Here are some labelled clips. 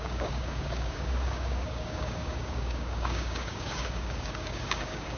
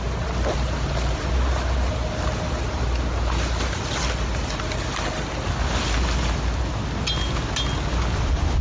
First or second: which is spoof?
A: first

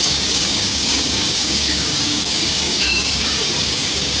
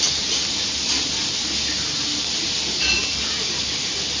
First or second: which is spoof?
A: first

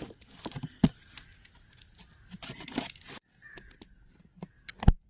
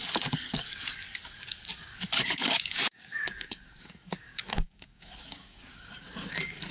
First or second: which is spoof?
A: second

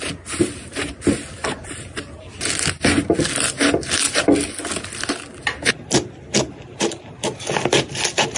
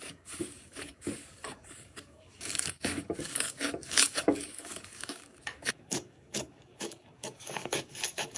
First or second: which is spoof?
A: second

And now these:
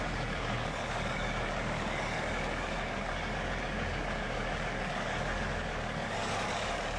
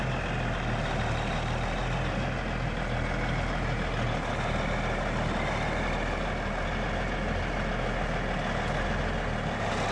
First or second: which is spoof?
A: first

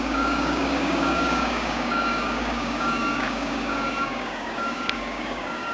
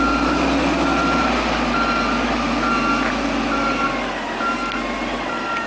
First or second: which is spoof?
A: first